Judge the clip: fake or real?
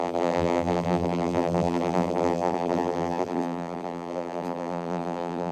fake